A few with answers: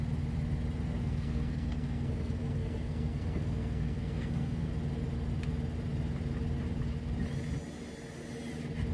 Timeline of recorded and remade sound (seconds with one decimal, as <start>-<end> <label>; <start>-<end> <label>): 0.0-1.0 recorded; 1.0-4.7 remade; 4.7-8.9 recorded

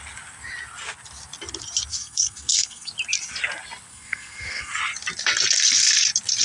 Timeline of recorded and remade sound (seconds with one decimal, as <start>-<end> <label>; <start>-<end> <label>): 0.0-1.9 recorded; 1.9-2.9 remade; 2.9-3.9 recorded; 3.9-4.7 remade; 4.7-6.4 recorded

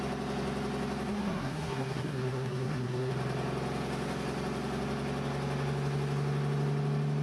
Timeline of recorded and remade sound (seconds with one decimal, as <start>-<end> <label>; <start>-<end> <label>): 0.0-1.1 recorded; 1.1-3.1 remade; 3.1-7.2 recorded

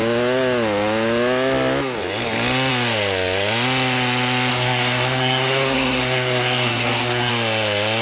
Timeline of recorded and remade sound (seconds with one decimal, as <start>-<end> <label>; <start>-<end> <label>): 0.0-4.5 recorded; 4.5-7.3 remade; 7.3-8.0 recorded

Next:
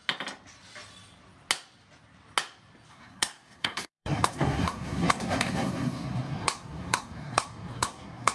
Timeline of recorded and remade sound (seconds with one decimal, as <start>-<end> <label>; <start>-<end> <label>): 0.0-2.9 recorded; 2.9-8.3 remade

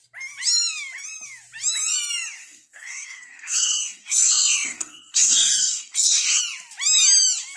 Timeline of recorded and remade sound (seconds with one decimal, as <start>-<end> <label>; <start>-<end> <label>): 0.0-2.4 recorded; 2.4-6.4 remade; 6.4-7.6 recorded

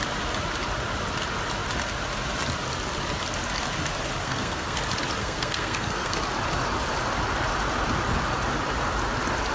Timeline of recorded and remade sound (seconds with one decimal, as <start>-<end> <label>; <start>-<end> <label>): 0.0-4.2 recorded; 4.2-4.8 remade; 4.8-5.2 recorded; 5.2-6.2 remade; 6.2-9.5 recorded